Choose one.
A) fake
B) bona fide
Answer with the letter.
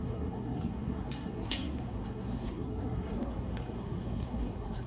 A